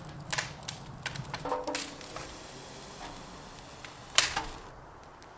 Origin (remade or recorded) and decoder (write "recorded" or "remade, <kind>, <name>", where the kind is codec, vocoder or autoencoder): recorded